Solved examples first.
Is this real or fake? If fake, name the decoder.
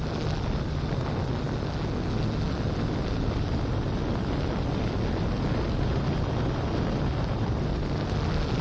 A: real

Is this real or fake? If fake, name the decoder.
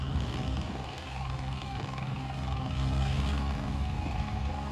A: fake, codec, DAC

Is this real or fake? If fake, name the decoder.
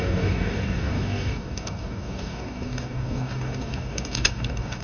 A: fake, codec, DAC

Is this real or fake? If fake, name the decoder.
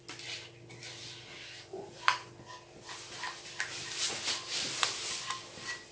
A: real